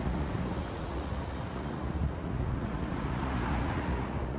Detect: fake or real fake